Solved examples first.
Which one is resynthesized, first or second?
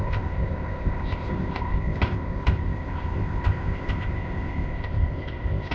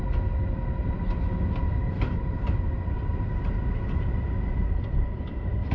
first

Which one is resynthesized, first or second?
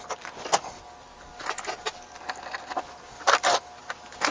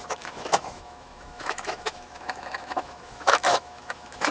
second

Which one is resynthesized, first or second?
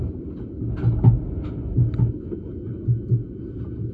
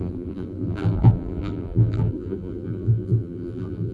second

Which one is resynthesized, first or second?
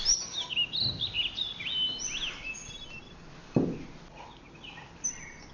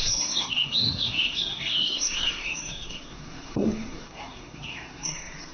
second